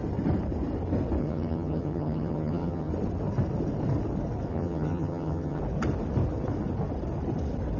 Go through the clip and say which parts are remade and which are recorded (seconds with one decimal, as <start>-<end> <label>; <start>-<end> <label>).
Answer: 0.0-1.2 recorded; 1.2-2.9 remade; 2.9-4.5 recorded; 4.5-5.6 remade; 5.6-7.8 recorded